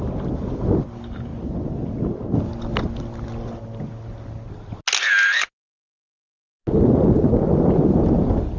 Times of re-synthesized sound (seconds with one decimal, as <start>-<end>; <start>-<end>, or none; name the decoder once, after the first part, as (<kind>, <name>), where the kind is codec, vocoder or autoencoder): none

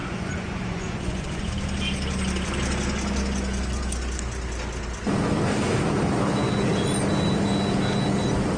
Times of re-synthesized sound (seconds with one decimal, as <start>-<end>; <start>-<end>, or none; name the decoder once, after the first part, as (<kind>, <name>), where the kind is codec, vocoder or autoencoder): 0.0-1.5 (vocoder, Vocos)

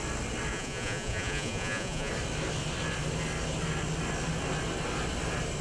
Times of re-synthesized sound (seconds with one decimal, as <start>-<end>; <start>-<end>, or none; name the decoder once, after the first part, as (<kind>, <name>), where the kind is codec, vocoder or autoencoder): 0.5-2.1 (vocoder, Vocos)

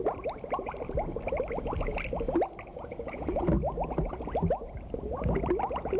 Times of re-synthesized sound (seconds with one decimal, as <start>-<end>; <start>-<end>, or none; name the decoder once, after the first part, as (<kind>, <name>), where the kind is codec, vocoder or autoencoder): 2.7-3.4 (vocoder, Vocos)

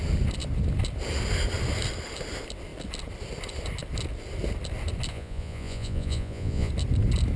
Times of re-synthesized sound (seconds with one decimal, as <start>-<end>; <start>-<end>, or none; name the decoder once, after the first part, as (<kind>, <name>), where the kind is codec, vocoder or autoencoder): 5.1-6.7 (vocoder, Vocos)